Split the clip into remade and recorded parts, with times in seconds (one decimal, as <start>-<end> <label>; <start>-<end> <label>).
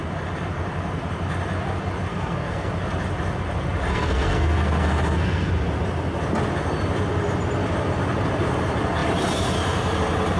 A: 0.0-2.1 recorded; 2.1-2.7 remade; 2.7-3.9 recorded; 3.9-5.5 remade; 5.5-10.4 recorded